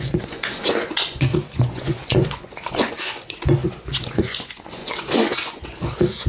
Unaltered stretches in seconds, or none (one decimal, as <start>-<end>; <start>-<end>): none